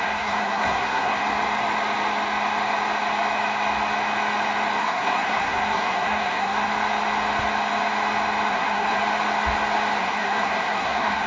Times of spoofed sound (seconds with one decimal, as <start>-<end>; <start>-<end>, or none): 0.0-1.2; 4.8-6.7; 8.5-9.0; 10.0-11.3